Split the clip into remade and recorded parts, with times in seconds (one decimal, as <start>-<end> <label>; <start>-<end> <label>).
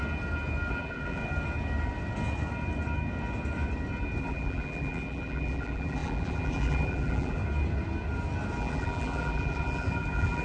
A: 0.0-0.7 recorded; 0.7-1.2 remade; 1.2-4.2 recorded; 4.2-7.4 remade; 7.4-8.6 recorded; 8.6-10.4 remade